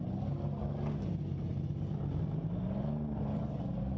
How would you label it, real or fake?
real